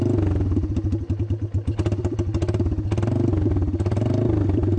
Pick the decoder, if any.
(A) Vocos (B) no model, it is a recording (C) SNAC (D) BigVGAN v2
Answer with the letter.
B